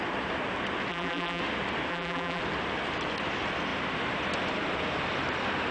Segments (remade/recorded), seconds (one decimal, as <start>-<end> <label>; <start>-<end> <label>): 0.0-0.9 recorded; 0.9-1.4 remade; 1.4-1.9 recorded; 1.9-2.4 remade; 2.4-5.7 recorded